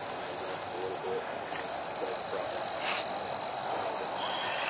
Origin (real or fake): real